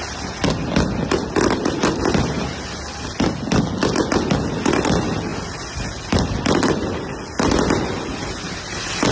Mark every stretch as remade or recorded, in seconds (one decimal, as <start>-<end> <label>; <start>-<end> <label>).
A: 0.0-9.1 recorded